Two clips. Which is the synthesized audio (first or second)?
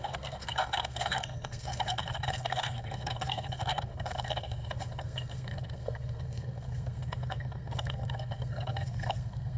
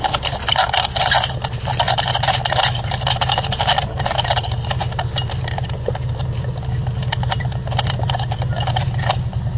first